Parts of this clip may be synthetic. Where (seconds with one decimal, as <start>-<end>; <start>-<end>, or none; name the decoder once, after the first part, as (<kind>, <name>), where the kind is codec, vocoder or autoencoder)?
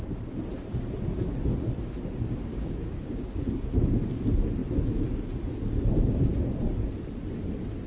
2.5-3.4 (codec, DAC)